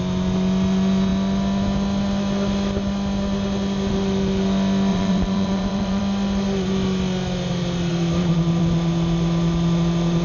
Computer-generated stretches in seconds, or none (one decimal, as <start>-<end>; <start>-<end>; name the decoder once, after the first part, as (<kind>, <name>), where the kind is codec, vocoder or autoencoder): 4.9-6.0 (vocoder, Vocos)